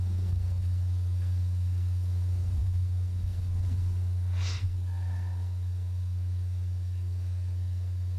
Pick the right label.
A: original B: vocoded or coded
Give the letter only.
B